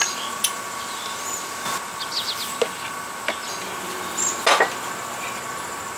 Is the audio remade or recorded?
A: recorded